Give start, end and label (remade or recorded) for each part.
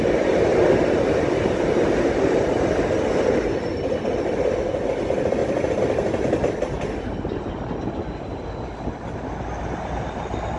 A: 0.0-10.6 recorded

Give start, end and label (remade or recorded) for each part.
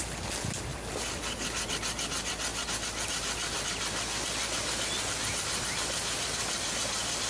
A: 0.0-7.3 recorded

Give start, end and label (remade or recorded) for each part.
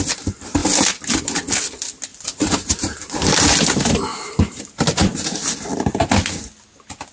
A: 0.0-2.1 recorded; 2.1-3.4 remade; 3.4-4.1 recorded; 4.1-4.6 remade; 4.6-7.1 recorded